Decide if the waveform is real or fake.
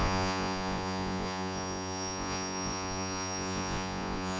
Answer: fake